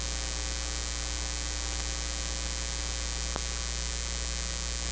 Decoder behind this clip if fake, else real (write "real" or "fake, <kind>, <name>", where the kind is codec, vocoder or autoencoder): real